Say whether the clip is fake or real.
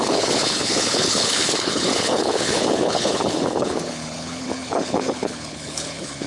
fake